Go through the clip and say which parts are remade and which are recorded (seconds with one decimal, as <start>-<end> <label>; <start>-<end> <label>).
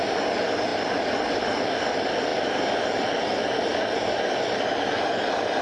0.0-5.6 recorded